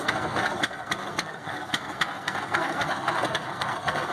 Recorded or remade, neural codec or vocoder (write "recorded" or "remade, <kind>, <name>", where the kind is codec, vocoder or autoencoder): remade, codec, SNAC